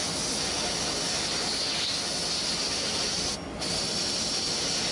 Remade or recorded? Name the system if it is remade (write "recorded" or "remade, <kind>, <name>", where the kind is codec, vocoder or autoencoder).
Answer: recorded